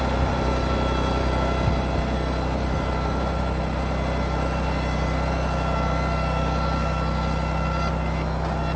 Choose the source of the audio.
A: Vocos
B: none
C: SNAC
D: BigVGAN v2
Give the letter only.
B